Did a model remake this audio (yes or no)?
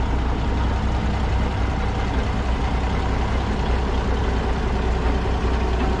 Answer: no